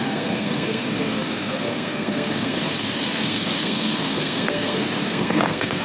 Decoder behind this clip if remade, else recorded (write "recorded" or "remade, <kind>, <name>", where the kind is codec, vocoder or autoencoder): remade, codec, SNAC